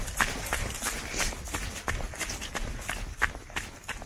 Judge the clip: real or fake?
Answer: real